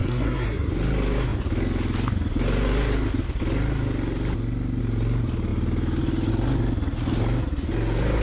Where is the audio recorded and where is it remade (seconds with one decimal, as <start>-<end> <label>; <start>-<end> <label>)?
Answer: 0.0-0.7 remade; 0.7-8.2 recorded